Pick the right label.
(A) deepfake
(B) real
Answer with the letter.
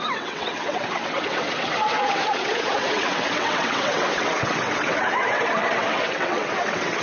A